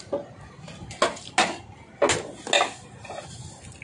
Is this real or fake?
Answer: real